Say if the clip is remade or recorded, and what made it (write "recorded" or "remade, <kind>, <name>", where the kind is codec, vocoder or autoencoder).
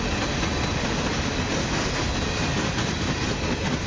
recorded